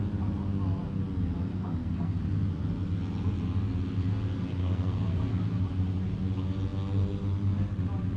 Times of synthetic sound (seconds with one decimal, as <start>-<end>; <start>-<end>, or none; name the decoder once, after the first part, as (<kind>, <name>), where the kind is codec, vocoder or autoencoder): 1.5-2.2 (codec, SNAC); 4.6-5.4